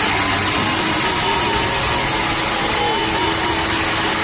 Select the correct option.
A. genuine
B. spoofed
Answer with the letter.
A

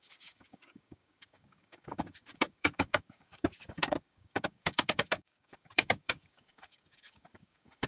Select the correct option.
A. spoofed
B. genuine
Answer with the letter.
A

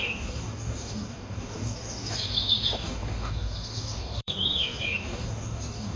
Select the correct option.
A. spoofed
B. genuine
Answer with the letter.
A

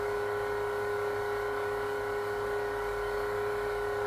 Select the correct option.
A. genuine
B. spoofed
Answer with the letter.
B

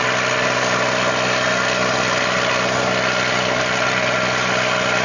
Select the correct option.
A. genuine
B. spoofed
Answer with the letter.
A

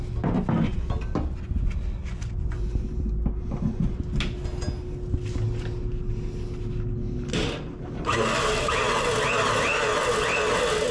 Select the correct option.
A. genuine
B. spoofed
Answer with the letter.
A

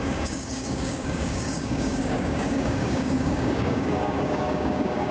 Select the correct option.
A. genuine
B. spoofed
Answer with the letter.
B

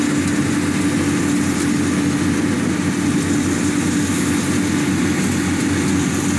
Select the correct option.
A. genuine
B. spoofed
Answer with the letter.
A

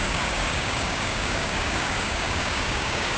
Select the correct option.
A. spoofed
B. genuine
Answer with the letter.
A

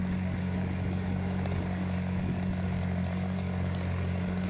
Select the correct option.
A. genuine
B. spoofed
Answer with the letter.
B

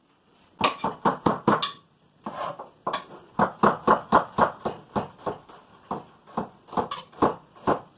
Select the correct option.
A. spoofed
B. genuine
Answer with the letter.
B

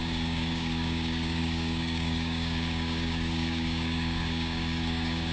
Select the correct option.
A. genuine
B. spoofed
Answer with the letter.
B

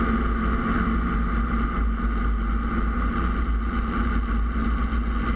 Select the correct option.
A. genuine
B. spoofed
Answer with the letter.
A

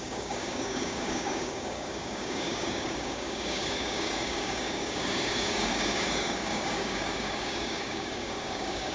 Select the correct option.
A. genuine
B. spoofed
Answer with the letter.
B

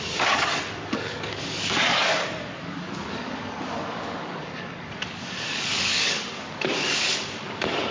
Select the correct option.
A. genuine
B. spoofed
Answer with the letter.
B